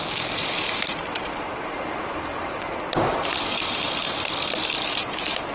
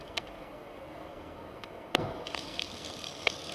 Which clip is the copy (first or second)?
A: second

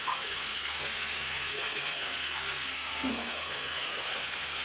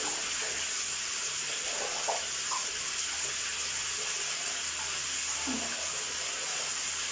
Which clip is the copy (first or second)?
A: first